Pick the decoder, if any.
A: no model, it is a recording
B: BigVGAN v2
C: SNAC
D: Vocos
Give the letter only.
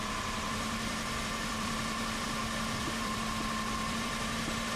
B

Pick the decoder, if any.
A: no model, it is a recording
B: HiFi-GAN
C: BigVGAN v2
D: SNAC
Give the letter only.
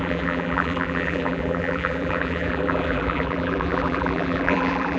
C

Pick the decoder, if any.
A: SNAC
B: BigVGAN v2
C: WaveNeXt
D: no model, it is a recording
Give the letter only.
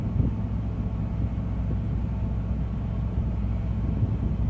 D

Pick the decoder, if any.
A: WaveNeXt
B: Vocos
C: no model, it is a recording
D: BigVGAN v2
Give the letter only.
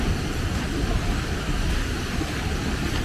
C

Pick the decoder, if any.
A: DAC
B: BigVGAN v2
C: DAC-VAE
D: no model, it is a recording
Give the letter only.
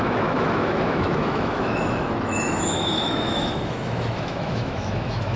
C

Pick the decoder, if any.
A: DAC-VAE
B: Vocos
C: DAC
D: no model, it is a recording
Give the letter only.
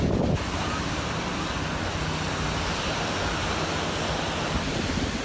D